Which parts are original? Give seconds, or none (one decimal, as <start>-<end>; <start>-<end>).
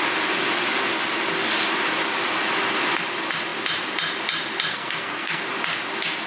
0.0-4.7; 5.4-6.3